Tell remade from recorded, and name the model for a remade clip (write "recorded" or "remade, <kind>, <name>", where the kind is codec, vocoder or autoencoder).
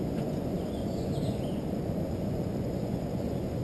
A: remade, vocoder, Vocos